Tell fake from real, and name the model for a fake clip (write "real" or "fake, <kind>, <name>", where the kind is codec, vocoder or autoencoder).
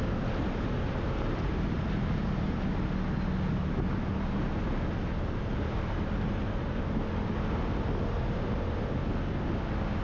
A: real